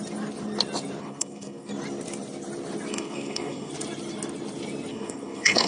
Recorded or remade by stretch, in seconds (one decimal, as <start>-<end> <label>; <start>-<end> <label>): 0.0-1.0 recorded; 1.0-1.7 remade; 1.7-2.9 recorded; 2.9-3.7 remade; 3.7-4.9 recorded; 4.9-5.7 remade